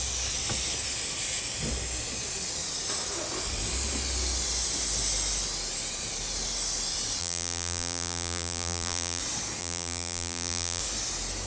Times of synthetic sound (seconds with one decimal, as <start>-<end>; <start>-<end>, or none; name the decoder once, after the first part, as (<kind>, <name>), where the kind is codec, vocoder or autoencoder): 7.2-9.2 (vocoder, BigVGAN v2); 9.6-10.8